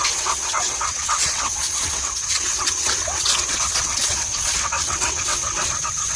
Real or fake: fake